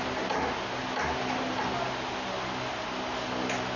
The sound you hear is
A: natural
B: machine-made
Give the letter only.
A